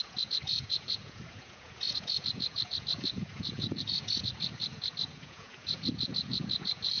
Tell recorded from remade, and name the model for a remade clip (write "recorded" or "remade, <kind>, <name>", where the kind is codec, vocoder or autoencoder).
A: remade, vocoder, Vocos